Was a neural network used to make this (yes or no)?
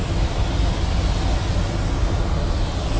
no